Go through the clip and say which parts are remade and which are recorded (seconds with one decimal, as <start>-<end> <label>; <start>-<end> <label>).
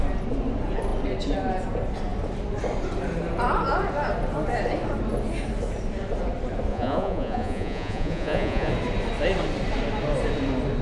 0.0-6.7 recorded; 6.7-8.7 remade; 8.7-10.8 recorded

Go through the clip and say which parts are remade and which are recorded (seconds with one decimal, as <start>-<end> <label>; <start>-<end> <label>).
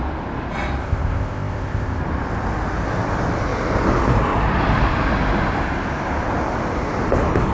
0.0-0.8 recorded; 0.8-2.0 remade; 2.0-7.5 recorded